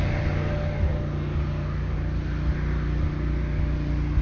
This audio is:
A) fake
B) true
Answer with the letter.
B